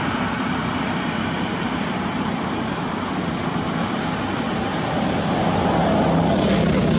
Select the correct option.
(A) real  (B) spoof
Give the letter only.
A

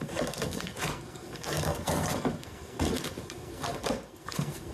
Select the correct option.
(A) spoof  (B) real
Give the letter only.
A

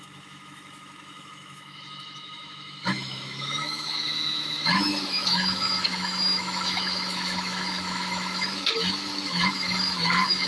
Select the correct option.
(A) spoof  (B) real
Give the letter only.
A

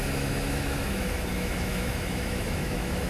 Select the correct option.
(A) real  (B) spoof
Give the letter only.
B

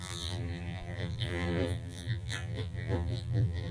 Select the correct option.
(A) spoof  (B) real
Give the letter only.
A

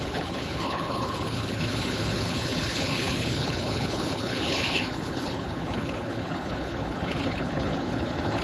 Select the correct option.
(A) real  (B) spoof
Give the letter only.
B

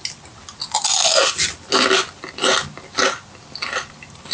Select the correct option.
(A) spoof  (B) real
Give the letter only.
B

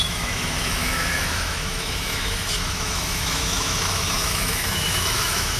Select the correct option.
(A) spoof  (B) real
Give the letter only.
A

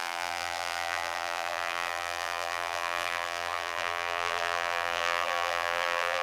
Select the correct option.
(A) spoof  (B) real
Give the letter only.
A